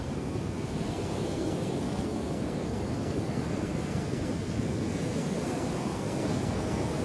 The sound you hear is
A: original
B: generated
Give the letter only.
B